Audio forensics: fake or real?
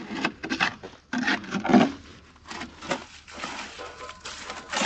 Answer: real